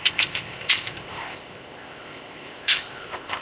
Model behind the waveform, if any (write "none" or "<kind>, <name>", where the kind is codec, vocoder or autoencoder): codec, ZipCodec